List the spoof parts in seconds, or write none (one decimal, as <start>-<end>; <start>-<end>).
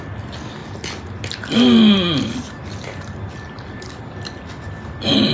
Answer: none